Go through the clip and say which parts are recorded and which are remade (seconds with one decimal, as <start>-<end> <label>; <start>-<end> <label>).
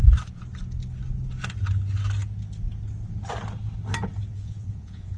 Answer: 0.0-4.3 recorded; 4.3-5.2 remade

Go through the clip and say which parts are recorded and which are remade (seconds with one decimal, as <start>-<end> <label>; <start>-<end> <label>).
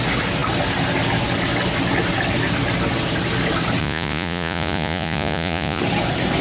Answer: 0.0-3.8 recorded; 3.8-5.8 remade; 5.8-6.4 recorded